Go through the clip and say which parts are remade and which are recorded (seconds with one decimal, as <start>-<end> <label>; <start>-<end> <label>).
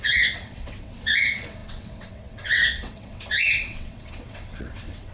0.0-5.1 remade